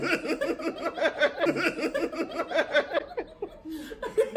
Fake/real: real